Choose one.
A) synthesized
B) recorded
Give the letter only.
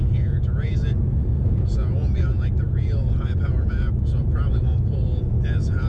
A